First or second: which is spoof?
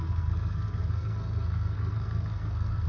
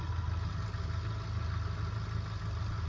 first